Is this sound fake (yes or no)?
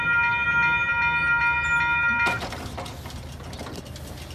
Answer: no